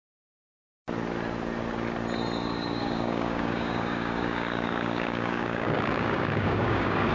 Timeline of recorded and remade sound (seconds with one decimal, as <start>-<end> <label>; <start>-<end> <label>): 0.0-2.8 recorded; 2.8-7.1 remade